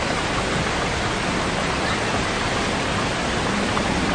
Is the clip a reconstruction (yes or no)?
no